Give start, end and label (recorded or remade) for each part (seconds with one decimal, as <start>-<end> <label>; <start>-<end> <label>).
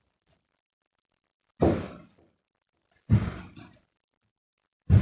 0.0-5.0 recorded